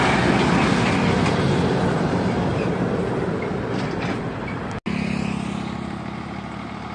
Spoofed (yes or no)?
no